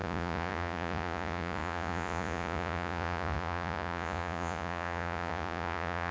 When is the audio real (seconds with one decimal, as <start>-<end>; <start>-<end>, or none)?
none